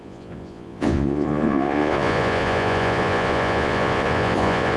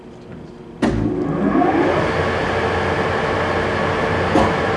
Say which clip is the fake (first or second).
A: first